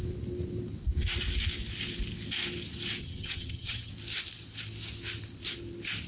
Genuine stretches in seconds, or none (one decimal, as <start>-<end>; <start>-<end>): 0.0-3.0; 3.9-6.1

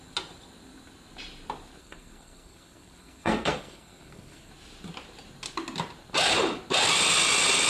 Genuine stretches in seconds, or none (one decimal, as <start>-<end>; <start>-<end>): 0.0-1.8; 4.5-7.7

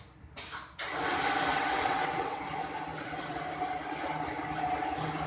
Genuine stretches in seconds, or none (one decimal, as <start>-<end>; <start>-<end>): 0.0-1.5; 2.4-2.9; 3.4-5.3

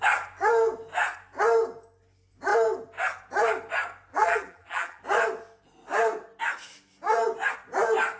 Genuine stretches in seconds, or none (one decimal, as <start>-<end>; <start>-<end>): 0.0-4.1; 5.0-8.2

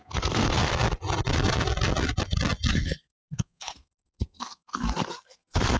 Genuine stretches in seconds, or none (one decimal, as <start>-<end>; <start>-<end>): 0.7-2.7

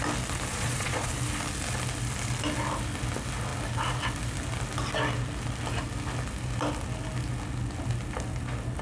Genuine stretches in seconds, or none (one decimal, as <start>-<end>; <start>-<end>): 0.0-0.5; 1.1-8.8

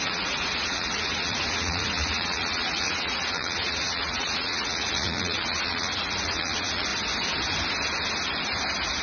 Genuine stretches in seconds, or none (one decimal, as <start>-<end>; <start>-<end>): 6.9-9.0

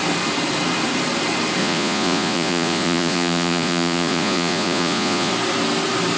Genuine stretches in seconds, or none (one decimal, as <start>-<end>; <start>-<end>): 0.0-1.6; 5.3-6.2